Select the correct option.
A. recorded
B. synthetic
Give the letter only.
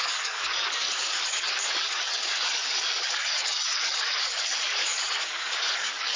B